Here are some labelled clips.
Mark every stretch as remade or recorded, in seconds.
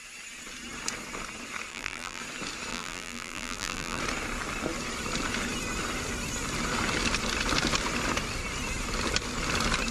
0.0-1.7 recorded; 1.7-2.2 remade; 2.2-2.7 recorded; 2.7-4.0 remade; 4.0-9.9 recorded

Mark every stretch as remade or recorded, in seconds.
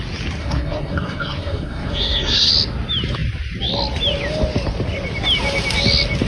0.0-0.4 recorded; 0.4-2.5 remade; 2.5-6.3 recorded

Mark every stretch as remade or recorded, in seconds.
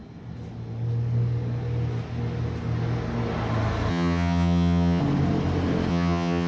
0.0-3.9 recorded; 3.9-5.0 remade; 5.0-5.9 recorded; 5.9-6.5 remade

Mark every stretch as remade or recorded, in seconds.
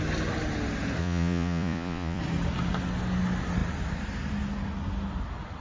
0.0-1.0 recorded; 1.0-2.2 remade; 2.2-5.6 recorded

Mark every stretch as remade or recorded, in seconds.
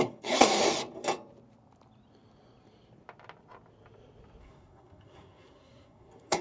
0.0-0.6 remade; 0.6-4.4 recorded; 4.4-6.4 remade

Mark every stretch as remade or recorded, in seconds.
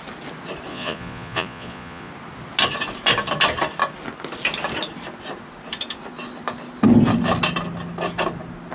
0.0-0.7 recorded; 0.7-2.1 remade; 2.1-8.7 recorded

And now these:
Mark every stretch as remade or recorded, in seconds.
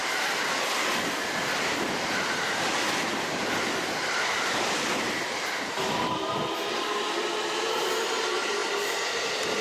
0.0-2.3 recorded; 2.3-8.6 remade; 8.6-9.6 recorded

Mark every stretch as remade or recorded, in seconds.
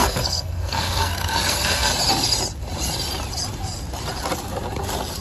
0.0-1.9 remade; 1.9-5.2 recorded